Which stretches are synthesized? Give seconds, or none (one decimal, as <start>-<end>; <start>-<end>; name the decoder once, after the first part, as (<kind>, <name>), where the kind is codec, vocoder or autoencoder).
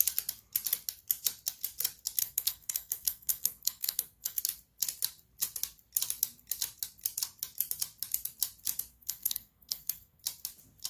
2.2-4.4 (codec, SNAC); 8.9-10.2